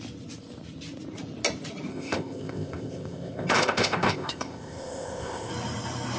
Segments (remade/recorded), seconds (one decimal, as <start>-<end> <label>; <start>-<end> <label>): 0.0-1.9 recorded; 1.9-5.5 remade; 5.5-6.2 recorded